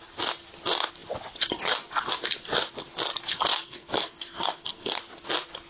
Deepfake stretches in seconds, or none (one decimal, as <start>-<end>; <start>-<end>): 3.6-5.0